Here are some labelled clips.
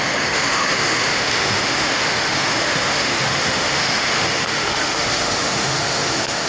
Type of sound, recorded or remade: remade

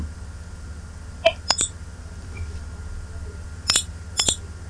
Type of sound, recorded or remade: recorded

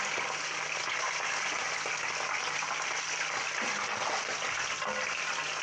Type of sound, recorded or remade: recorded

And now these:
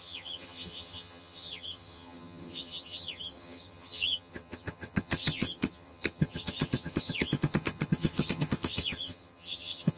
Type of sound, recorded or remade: remade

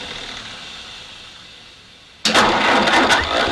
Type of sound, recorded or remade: recorded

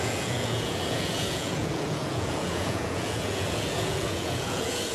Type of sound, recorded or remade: remade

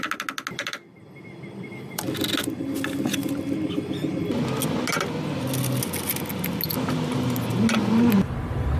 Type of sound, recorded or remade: recorded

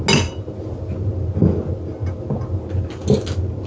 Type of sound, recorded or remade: recorded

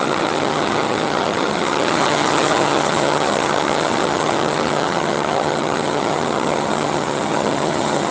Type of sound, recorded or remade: remade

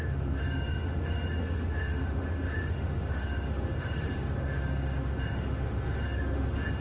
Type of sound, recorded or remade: remade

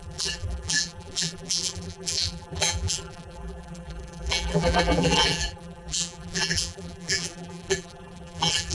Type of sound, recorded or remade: remade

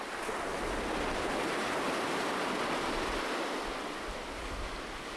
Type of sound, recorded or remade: recorded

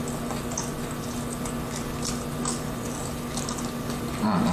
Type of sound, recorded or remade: recorded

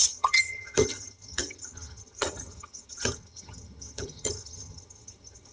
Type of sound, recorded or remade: remade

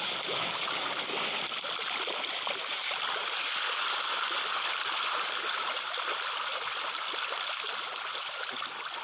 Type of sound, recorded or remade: recorded